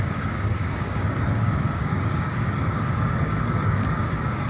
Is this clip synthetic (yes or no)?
yes